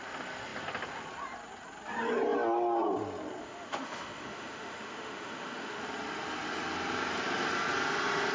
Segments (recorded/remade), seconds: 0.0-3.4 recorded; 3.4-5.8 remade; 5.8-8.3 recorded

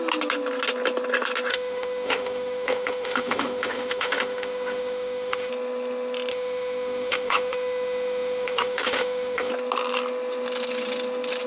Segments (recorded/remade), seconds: 0.0-1.5 recorded; 1.5-5.5 remade; 5.5-6.3 recorded; 6.3-9.5 remade; 9.5-11.5 recorded

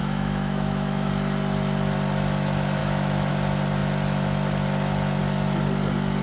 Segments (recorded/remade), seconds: 0.0-1.1 remade; 1.1-2.8 recorded; 2.8-3.3 remade; 3.3-6.2 recorded

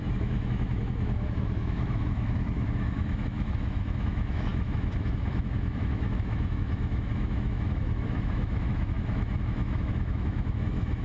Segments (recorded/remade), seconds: 0.0-11.0 remade

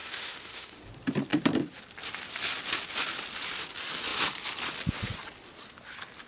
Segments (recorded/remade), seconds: 0.0-0.8 remade; 0.8-6.3 recorded